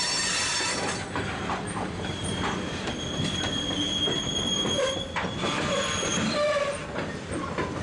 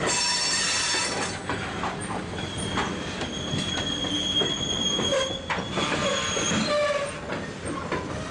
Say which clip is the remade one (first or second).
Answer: first